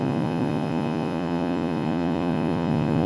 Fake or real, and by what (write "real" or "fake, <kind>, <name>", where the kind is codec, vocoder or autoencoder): fake, vocoder, Vocos